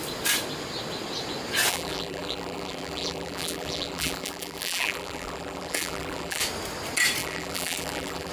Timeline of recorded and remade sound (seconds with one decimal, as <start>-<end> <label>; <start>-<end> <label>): 0.0-1.7 recorded; 1.7-6.4 remade; 6.4-7.2 recorded; 7.2-8.3 remade